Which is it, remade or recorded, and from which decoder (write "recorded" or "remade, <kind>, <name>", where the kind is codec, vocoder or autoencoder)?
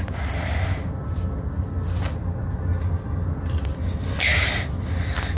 recorded